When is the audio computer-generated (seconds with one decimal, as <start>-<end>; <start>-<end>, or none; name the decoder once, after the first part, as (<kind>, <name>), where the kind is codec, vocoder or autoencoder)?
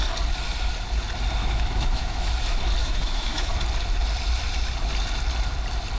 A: 1.4-2.3 (autoencoder, DAC-VAE); 2.8-3.5